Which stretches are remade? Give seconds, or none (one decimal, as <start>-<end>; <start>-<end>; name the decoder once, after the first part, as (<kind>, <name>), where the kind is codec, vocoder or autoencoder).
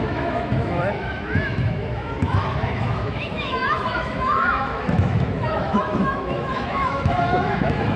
0.0-8.0 (autoencoder, DAC-VAE)